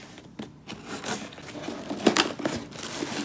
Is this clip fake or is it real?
real